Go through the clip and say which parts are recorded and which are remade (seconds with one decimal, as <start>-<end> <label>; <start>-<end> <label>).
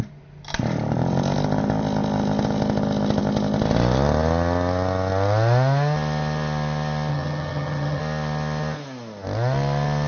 0.0-7.1 recorded; 7.1-8.0 remade; 8.0-10.1 recorded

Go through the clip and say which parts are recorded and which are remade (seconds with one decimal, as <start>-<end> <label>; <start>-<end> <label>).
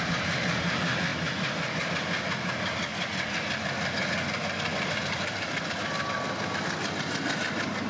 0.0-1.1 recorded; 1.1-1.9 remade; 1.9-4.7 recorded; 4.7-5.6 remade; 5.6-7.9 recorded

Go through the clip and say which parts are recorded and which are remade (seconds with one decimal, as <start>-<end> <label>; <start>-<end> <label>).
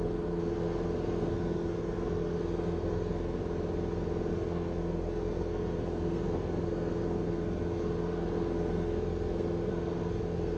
0.0-3.4 remade; 3.4-4.3 recorded; 4.3-10.6 remade